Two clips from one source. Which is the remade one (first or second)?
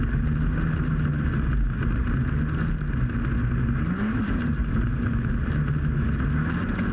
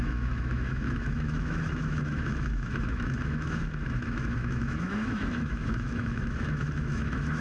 second